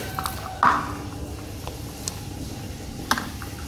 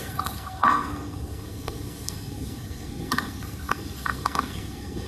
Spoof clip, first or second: second